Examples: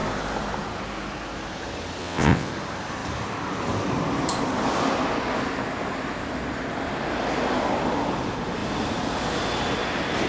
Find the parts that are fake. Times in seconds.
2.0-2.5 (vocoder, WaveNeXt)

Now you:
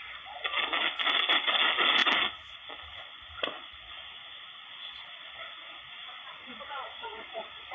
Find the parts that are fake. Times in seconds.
none

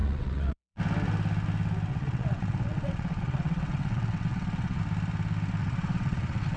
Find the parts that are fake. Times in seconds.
0.0-0.8 (vocoder, WaveNeXt); 1.9-4.8; 5.6-6.6

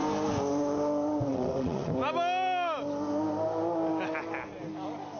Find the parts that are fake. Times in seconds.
1.3-1.9 (vocoder, WaveNeXt)

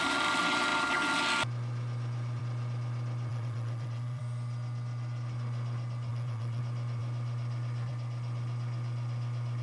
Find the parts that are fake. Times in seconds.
3.3-4.2 (vocoder, WaveNeXt); 6.1-6.6